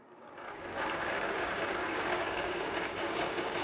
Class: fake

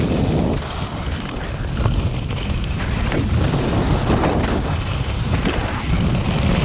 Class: real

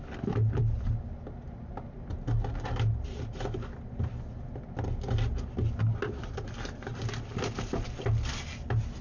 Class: real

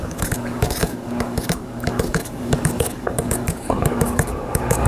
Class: fake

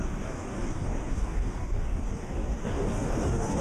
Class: fake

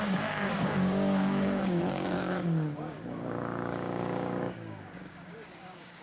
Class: fake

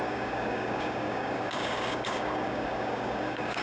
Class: fake